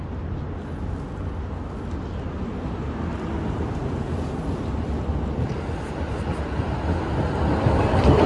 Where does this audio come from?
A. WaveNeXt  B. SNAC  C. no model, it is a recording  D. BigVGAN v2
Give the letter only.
C